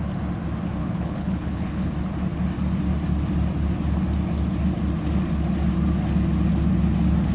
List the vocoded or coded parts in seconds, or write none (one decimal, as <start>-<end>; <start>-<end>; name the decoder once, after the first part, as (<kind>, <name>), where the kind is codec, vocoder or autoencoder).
0.8-1.9 (codec, HILCodec)